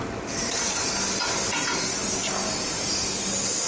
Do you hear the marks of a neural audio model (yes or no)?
no